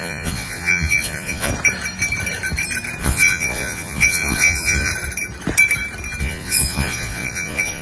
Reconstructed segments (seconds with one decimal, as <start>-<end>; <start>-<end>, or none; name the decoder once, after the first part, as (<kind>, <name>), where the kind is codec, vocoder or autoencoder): 0.0-1.5 (vocoder, Vocos); 3.0-4.9; 6.2-7.8